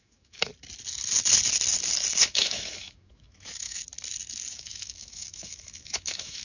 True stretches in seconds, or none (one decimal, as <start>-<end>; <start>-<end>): 0.5-2.2; 3.8-4.5